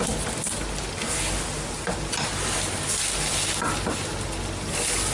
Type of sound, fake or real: real